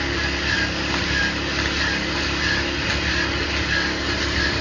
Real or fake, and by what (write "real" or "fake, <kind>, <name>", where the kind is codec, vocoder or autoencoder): real